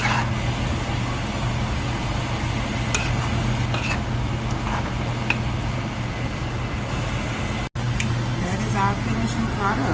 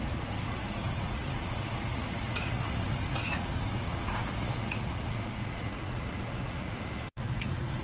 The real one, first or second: first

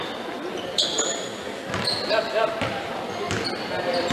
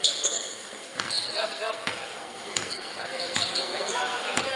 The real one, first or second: first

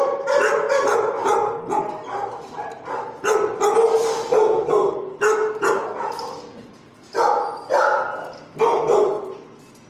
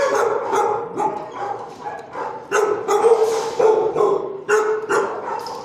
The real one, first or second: first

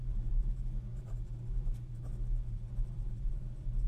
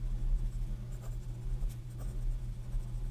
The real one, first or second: second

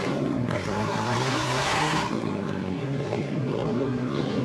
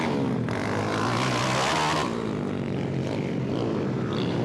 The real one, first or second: second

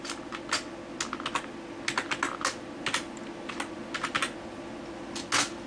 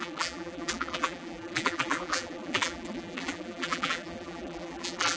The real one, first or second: first